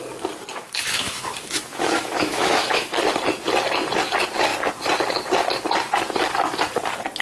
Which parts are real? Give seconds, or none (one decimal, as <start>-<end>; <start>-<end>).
0.0-0.5; 2.9-7.2